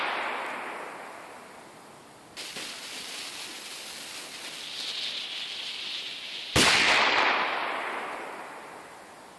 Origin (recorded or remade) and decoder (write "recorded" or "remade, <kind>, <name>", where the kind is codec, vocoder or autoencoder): recorded